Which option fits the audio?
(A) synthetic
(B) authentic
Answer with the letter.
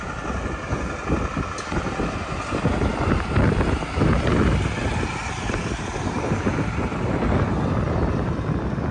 B